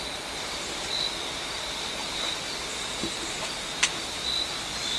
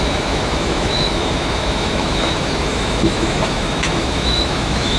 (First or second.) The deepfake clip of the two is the second